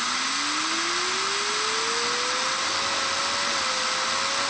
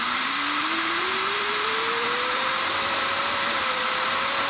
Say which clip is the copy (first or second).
second